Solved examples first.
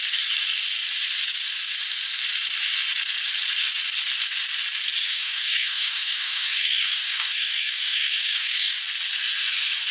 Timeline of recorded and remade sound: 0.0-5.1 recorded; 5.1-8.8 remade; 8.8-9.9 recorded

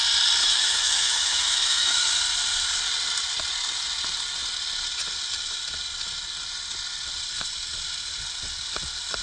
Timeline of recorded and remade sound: 0.0-0.4 recorded; 0.4-2.1 remade; 2.1-9.2 recorded

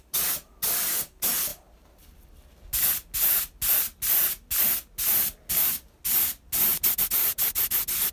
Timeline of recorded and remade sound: 0.0-8.1 recorded

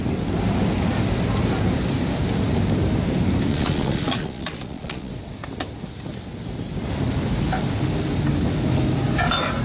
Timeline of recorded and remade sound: 0.0-3.5 recorded; 3.5-5.1 remade; 5.1-9.6 recorded

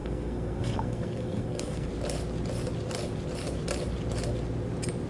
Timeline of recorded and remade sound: 0.0-1.9 remade; 1.9-5.1 recorded